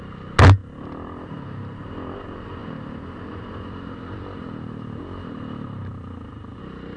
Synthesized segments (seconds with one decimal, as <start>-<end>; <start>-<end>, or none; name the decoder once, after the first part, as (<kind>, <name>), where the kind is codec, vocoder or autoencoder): 0.6-1.6 (vocoder, BigVGAN v2); 2.6-6.6